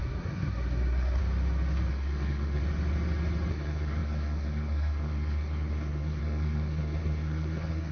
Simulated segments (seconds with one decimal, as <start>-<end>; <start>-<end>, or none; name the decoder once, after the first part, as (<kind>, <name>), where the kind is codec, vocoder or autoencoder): 0.0-1.2 (codec, SNAC); 1.9-2.6; 3.5-7.9